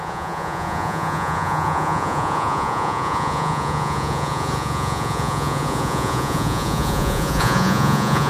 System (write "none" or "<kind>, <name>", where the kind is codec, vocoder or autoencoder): vocoder, Vocos